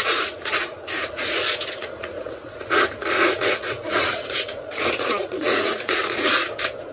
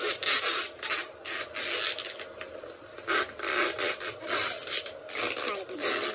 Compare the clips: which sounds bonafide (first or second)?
second